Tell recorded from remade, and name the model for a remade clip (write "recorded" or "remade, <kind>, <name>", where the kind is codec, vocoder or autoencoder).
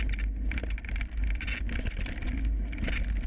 recorded